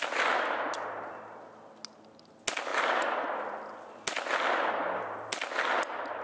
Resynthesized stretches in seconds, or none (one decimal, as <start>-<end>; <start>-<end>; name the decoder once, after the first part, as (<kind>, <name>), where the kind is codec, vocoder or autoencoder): none

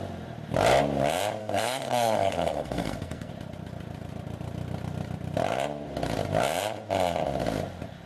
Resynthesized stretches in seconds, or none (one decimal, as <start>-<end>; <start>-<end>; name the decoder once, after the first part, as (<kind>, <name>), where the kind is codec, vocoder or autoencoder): 1.4-3.3 (codec, SNAC)

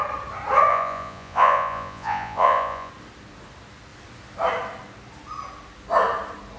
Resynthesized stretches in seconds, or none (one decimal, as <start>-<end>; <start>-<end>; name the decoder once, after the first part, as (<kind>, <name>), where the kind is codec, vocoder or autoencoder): 0.7-2.9 (vocoder, Vocos)

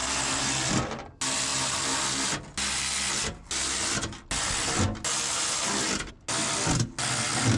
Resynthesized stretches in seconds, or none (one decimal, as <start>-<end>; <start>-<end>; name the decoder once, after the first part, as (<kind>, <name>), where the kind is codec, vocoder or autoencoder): none

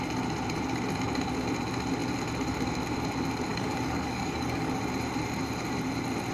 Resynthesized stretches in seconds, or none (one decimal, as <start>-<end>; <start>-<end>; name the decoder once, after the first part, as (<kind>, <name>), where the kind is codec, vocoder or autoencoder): 3.5-4.8 (codec, DAC)

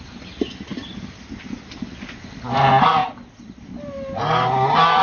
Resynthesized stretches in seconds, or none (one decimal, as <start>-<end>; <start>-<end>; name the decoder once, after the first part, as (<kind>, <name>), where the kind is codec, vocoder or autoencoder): none